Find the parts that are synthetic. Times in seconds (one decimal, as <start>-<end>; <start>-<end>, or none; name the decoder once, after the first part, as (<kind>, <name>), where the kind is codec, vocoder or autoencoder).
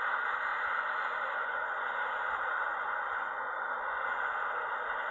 0.5-2.2 (vocoder, Vocos); 2.7-4.3